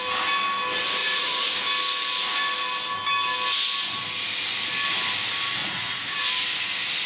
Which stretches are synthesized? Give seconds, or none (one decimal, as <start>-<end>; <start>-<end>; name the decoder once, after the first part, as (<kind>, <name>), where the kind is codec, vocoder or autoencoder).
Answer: 1.0-1.5 (vocoder, Vocos); 5.6-6.2